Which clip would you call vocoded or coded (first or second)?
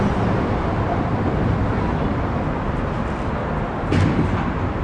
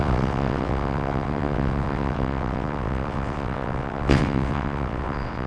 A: second